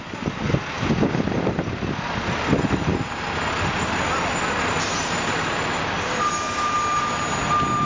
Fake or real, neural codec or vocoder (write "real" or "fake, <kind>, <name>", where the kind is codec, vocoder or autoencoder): real